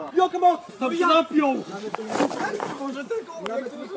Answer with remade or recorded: remade